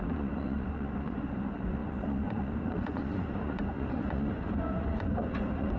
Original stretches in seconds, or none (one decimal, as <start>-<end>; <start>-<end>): none